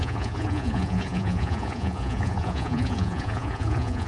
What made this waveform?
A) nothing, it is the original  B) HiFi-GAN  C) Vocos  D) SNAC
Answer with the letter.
C